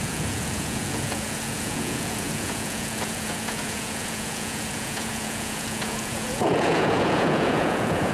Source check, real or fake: fake